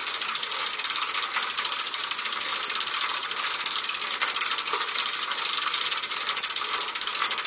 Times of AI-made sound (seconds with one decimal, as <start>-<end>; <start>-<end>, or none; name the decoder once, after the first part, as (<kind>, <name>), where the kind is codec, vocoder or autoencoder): none